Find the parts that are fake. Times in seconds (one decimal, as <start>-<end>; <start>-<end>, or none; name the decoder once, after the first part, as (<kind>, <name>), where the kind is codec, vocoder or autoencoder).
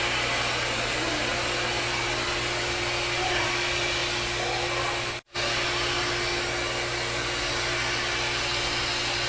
none